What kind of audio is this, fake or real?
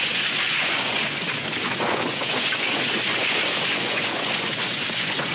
fake